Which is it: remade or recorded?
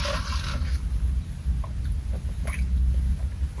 recorded